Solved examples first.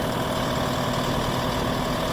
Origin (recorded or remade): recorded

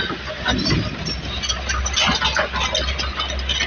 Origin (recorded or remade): recorded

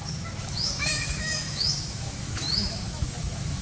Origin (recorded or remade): remade